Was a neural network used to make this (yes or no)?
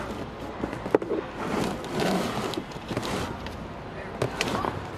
no